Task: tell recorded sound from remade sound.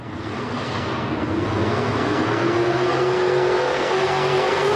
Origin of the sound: remade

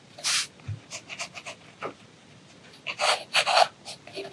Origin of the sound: recorded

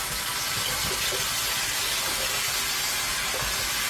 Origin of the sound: recorded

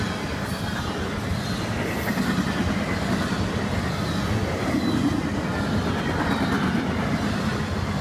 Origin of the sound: recorded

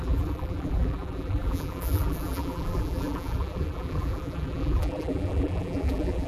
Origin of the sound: remade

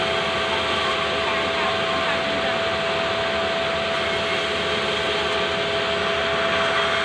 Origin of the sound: recorded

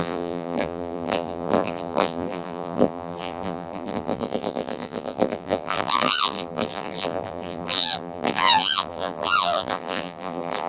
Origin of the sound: remade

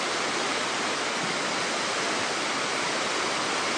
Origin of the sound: recorded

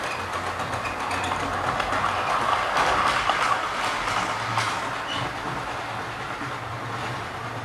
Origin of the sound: recorded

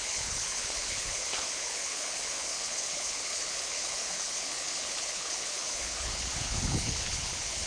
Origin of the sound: remade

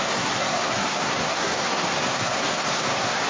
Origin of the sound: remade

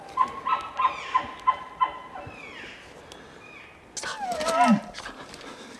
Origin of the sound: recorded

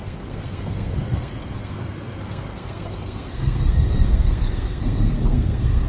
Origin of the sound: remade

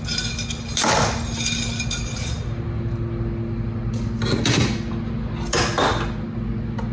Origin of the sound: recorded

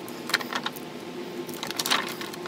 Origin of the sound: recorded